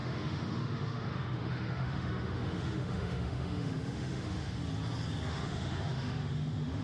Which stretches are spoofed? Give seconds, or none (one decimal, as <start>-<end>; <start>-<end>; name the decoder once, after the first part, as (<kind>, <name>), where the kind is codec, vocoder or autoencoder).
0.0-4.6 (autoencoder, DAC-VAE); 5.3-6.8